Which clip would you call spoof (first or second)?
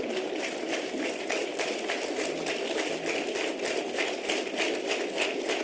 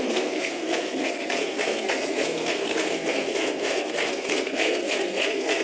second